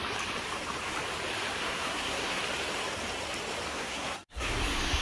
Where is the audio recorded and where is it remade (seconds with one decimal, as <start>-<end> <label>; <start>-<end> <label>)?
0.0-1.6 recorded; 1.6-2.4 remade; 2.4-3.7 recorded; 3.7-4.6 remade; 4.6-5.0 recorded